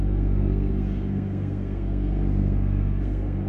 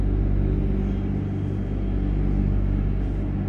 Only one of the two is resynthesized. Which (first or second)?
first